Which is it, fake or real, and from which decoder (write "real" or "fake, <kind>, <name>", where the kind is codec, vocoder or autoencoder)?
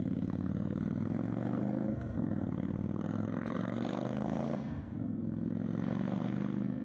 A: fake, codec, SNAC